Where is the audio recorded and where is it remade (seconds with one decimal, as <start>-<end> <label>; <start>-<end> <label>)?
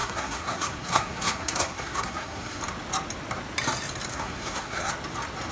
0.0-2.6 remade; 2.6-4.1 recorded; 4.1-4.9 remade; 4.9-5.5 recorded